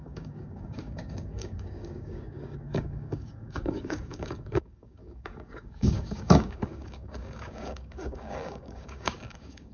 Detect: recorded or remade remade